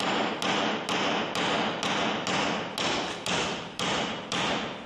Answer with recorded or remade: recorded